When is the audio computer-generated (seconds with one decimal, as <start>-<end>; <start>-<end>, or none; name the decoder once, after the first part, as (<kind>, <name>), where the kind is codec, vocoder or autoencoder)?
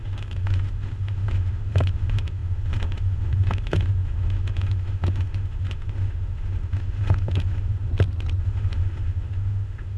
0.0-7.9 (autoencoder, DAC-VAE); 8.4-10.0